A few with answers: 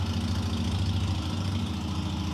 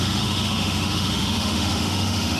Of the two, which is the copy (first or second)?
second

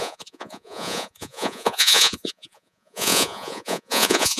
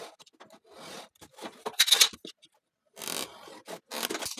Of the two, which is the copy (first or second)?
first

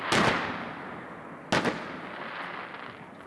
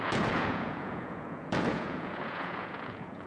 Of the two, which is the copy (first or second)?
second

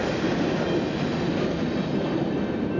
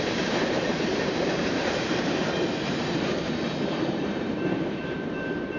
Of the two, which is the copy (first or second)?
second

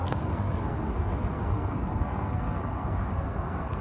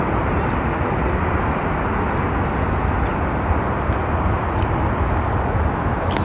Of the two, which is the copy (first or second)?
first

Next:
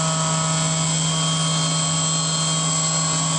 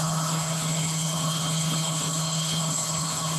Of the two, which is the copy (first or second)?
second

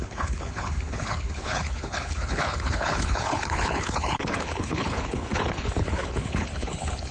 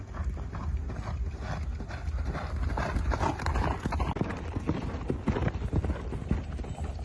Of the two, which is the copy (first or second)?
first